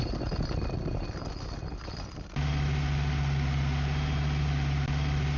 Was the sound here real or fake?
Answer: real